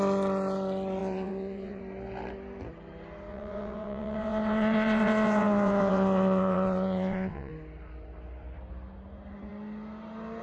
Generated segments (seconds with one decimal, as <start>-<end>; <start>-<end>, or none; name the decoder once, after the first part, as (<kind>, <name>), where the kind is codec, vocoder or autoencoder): 1.0-1.8 (vocoder, WaveNeXt); 3.3-7.5

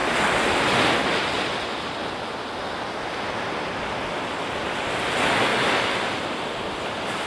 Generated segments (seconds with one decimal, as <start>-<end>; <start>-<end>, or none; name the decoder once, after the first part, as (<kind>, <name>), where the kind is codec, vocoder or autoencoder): none

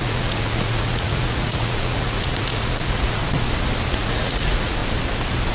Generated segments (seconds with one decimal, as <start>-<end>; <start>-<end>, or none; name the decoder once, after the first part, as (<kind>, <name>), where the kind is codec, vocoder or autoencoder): 0.0-3.2 (vocoder, Vocos); 3.9-4.8